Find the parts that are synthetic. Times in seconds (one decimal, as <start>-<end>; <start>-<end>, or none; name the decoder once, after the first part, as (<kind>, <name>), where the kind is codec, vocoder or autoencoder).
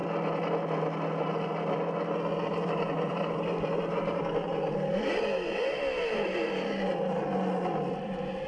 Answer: 2.3-6.9 (vocoder, BigVGAN v2)